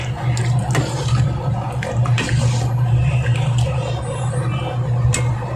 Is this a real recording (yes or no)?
yes